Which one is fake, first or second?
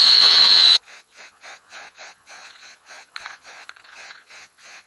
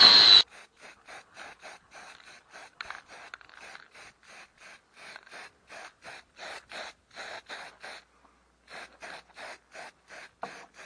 first